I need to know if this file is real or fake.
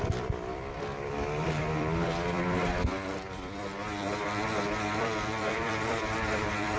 fake